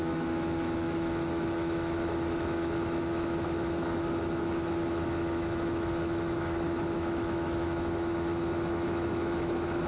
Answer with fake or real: fake